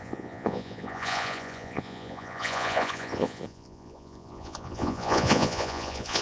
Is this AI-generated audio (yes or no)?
yes